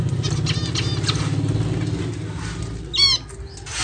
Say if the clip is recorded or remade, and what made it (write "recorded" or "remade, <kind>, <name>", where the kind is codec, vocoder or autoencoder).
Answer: recorded